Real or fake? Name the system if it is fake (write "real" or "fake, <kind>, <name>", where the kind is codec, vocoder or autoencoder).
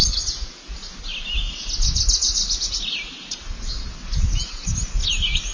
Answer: real